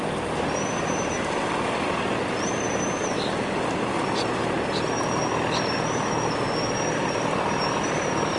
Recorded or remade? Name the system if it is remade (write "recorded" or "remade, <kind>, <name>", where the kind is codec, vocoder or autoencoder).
recorded